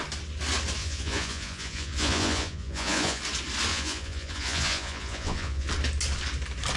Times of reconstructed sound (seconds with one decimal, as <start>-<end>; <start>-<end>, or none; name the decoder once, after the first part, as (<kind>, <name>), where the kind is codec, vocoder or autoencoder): 0.8-3.2 (vocoder, Vocos); 3.7-5.7